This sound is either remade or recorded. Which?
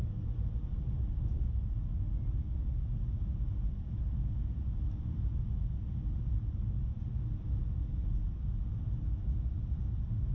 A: recorded